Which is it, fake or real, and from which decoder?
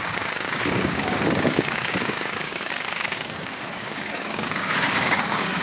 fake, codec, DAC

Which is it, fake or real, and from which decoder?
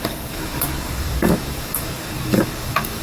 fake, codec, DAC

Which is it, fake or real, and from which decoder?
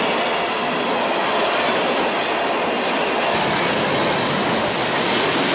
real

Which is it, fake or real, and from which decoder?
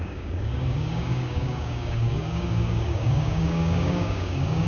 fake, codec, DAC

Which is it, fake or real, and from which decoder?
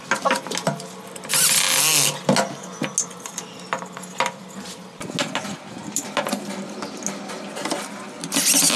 real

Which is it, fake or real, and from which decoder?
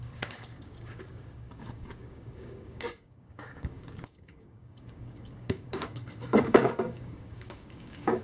fake, codec, DAC